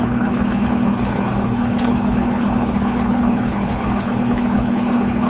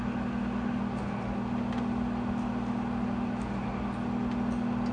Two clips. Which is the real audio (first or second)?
second